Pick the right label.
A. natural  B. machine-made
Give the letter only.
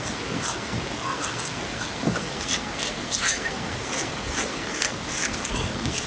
B